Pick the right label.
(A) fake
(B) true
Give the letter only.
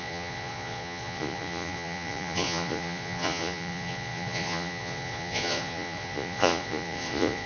A